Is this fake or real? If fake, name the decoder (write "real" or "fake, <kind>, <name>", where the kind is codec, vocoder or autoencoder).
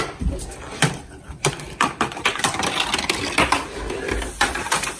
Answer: fake, vocoder, BigVGAN v2